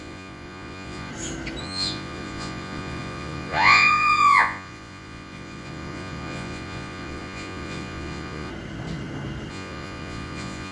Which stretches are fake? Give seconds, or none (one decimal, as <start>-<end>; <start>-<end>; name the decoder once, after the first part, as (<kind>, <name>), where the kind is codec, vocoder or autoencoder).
0.0-1.1 (vocoder, Vocos); 1.6-8.5; 9.5-10.7